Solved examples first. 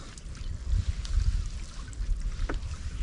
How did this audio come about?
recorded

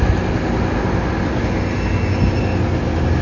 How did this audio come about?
recorded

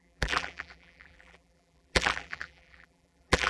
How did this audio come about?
remade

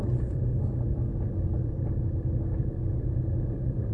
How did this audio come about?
recorded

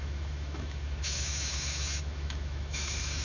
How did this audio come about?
remade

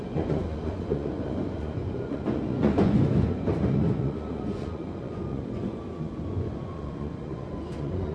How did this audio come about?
remade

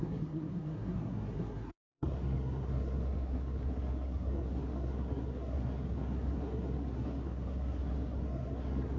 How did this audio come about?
remade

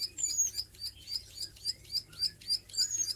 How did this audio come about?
recorded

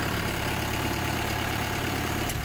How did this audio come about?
remade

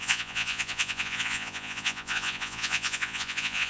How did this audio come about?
remade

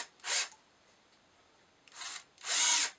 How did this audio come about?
remade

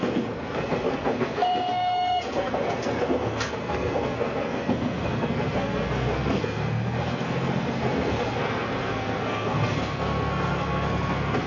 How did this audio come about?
remade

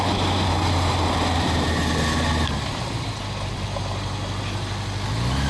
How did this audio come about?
recorded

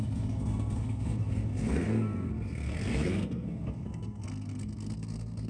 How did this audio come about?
remade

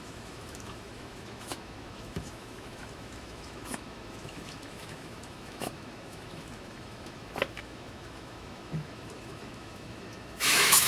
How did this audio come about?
remade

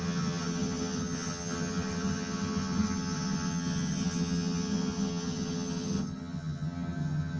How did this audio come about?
remade